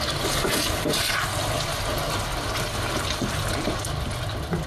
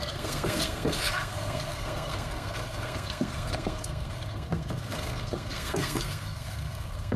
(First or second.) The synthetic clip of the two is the second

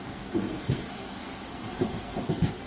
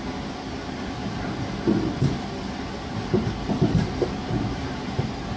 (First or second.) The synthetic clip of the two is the first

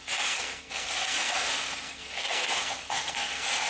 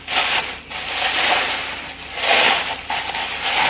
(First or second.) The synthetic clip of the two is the first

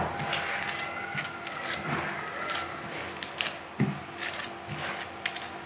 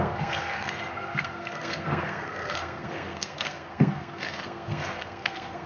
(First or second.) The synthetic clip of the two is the second